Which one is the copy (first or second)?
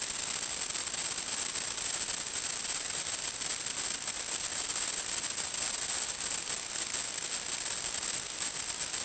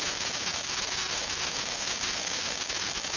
second